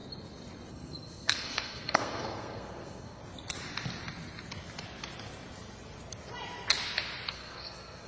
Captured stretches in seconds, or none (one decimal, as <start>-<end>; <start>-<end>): 0.0-0.7; 3.2-7.3